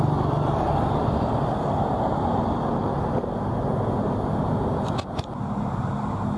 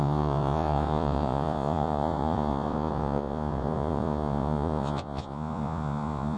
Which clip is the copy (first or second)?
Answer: second